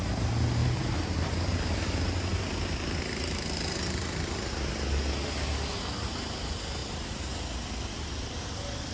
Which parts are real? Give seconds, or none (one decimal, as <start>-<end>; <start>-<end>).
0.0-0.6; 1.8-2.3; 4.5-6.8; 7.3-8.9